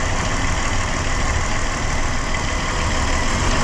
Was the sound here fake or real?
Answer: real